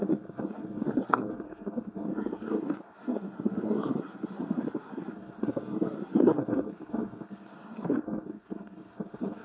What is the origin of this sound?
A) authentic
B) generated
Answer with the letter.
B